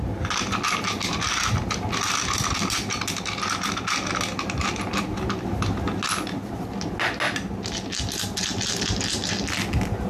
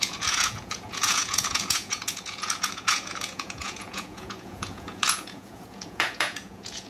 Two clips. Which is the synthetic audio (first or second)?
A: second